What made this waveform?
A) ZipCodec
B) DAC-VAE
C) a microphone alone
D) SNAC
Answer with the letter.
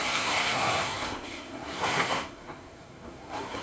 D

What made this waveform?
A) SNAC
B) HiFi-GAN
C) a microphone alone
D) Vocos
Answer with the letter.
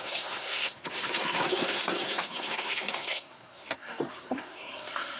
A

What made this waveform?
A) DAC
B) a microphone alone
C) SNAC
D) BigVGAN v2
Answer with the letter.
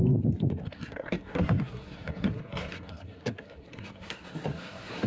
C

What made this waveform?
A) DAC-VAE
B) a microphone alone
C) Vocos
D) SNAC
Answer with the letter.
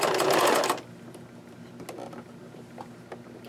B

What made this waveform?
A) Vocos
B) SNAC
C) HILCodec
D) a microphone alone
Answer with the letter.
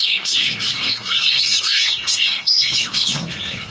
B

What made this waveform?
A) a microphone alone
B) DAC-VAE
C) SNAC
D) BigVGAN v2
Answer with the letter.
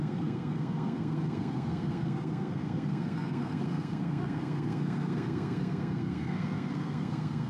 C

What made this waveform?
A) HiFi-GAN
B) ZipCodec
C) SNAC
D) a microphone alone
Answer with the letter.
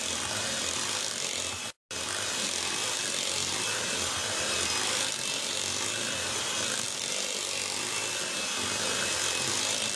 D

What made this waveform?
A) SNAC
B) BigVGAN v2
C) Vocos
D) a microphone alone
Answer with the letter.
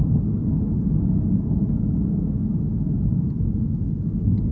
D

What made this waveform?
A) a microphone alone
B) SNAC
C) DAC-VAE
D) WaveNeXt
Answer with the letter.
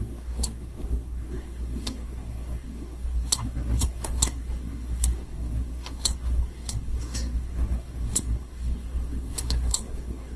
B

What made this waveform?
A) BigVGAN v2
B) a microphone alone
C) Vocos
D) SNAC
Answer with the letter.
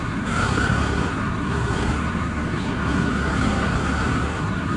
D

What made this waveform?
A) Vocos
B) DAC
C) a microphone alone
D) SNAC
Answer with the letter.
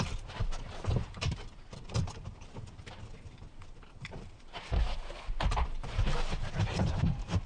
C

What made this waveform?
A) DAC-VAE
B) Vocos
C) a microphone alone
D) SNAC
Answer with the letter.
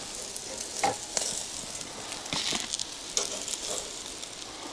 C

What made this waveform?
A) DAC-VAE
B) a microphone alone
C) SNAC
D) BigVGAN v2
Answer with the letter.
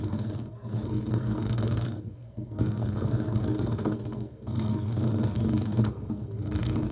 C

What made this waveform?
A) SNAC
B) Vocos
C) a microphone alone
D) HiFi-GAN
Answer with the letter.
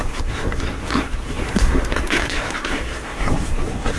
A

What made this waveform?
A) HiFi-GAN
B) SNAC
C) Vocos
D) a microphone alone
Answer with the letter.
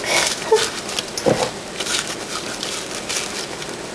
D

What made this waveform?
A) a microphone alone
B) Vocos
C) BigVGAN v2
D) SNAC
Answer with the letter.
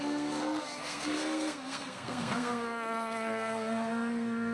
D